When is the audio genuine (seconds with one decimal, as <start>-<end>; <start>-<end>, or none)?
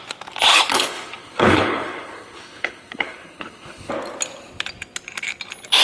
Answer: 0.0-0.5; 3.9-5.8